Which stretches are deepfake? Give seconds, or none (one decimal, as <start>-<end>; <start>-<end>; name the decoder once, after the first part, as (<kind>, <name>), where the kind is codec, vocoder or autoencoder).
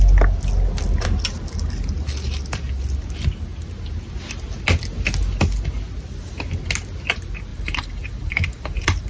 7.5-9.1 (vocoder, BigVGAN v2)